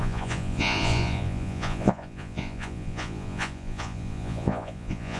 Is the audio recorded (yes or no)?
no